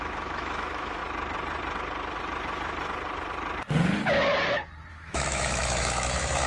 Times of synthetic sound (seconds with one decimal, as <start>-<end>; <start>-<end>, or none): 0.0-1.0; 4.9-6.5